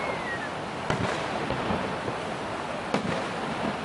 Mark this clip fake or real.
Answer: real